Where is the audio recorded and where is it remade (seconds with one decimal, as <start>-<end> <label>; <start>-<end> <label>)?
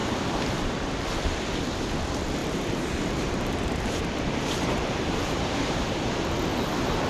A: 0.0-0.7 remade; 0.7-2.4 recorded; 2.4-6.5 remade; 6.5-7.1 recorded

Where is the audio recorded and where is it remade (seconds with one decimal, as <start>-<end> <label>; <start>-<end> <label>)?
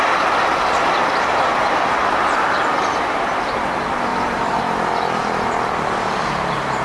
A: 0.0-1.5 recorded; 1.5-3.6 remade; 3.6-4.1 recorded; 4.1-4.6 remade; 4.6-6.8 recorded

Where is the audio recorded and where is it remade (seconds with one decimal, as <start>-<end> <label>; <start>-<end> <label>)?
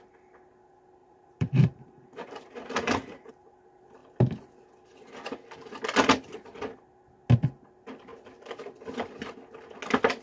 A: 0.0-1.0 recorded; 1.0-3.3 remade; 3.3-10.2 recorded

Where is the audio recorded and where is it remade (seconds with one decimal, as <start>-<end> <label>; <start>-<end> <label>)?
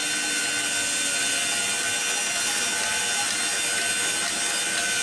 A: 0.0-5.0 recorded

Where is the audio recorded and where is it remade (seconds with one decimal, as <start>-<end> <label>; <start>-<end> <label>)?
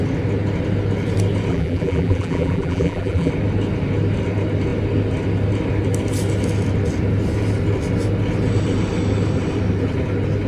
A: 0.0-1.5 recorded; 1.5-3.3 remade; 3.3-10.5 recorded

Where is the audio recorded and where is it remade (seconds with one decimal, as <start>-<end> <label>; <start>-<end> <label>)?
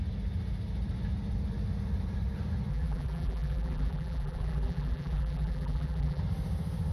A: 0.0-2.7 recorded; 2.7-6.2 remade; 6.2-6.9 recorded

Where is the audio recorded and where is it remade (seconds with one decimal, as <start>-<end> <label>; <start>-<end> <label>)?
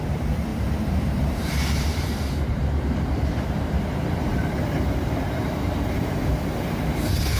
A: 0.0-7.4 remade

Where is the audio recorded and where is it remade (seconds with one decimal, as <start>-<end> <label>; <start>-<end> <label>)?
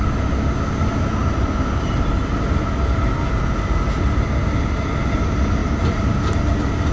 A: 0.0-1.2 recorded; 1.2-2.1 remade; 2.1-5.6 recorded; 5.6-6.3 remade; 6.3-6.9 recorded